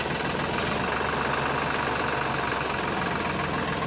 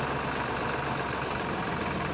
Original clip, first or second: first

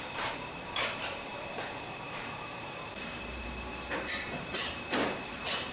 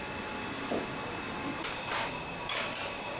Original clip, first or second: second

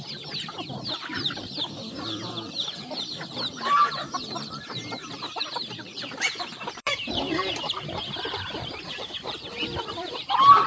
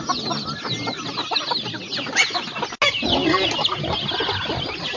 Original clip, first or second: second